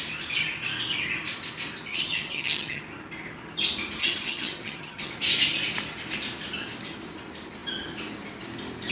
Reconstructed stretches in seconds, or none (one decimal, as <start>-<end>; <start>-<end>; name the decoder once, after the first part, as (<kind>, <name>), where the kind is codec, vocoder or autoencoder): 1.9-2.8 (vocoder, HiFi-GAN); 4.0-5.1